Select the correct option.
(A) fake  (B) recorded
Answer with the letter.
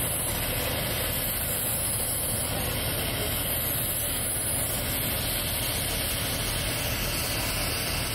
B